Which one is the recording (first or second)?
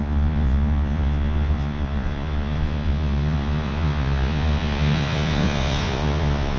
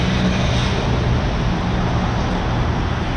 second